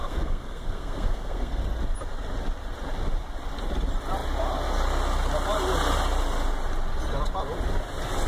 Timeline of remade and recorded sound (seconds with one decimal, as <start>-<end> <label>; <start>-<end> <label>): 0.0-1.6 remade; 1.6-8.3 recorded